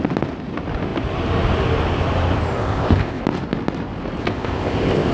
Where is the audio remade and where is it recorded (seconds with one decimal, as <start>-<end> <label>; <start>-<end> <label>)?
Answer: 0.0-2.6 recorded; 2.6-3.2 remade; 3.2-4.2 recorded; 4.2-5.1 remade

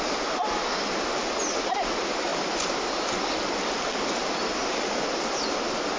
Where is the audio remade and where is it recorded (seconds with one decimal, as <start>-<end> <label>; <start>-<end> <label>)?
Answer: 0.0-6.0 recorded

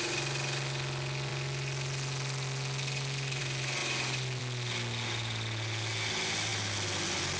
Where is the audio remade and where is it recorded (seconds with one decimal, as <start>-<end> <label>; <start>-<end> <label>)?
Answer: 0.0-7.4 recorded